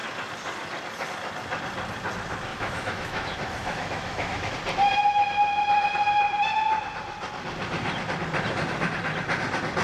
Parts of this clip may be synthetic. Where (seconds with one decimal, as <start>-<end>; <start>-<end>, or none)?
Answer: 2.5-4.5